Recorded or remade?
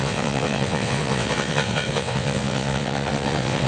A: remade